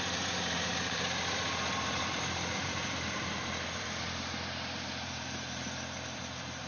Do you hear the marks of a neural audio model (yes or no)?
yes